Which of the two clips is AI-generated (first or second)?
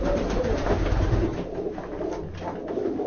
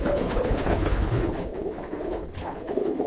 second